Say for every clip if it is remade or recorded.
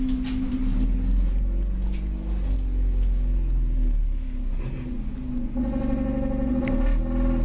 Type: recorded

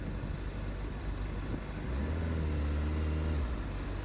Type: recorded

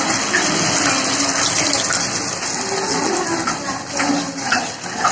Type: recorded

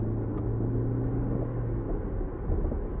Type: recorded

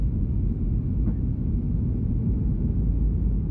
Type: recorded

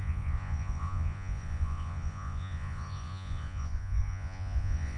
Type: remade